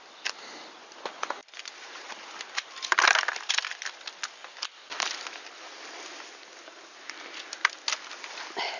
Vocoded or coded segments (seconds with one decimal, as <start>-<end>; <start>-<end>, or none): 1.4-3.5; 4.9-6.6